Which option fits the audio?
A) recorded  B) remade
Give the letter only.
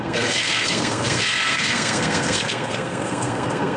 B